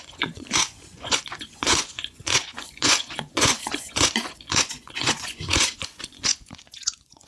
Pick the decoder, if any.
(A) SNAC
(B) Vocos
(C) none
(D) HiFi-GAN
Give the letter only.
B